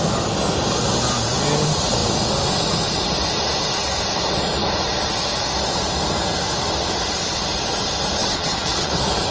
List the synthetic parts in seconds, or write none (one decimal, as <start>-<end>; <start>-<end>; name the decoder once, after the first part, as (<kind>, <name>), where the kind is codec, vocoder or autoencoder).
8.2-8.9 (vocoder, WaveNeXt)